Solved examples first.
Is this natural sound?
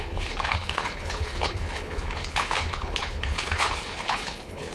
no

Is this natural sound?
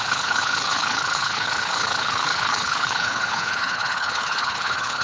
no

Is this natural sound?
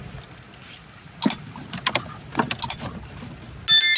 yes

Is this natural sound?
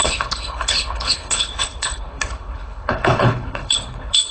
no